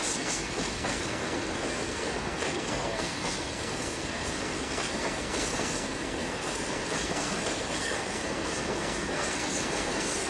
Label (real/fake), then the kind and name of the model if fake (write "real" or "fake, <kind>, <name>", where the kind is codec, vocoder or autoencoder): fake, codec, SNAC